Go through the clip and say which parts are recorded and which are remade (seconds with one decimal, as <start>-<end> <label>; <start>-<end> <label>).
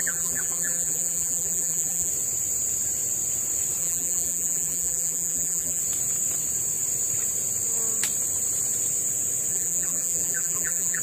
0.0-2.1 remade; 2.1-3.8 recorded; 3.8-5.8 remade; 5.8-9.5 recorded; 9.5-11.0 remade